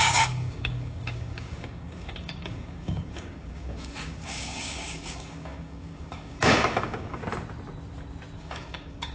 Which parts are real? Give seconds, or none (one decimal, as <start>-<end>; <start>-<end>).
7.2-8.4